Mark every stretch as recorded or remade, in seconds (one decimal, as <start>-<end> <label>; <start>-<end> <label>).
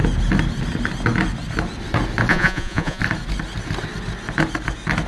0.0-2.3 recorded; 2.3-3.0 remade; 3.0-5.1 recorded